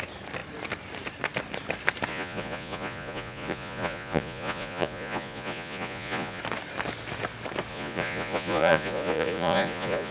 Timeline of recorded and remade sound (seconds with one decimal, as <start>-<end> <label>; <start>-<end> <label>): 0.0-2.1 recorded; 2.1-6.4 remade; 6.4-7.7 recorded; 7.7-10.1 remade